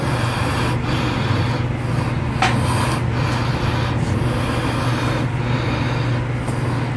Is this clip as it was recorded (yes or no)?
yes